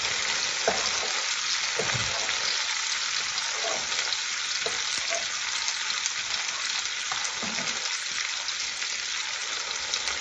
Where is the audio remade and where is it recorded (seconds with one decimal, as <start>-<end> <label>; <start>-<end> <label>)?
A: 0.0-10.2 recorded